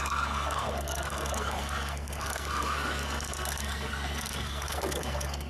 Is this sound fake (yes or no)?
yes